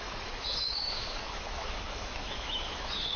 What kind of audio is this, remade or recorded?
remade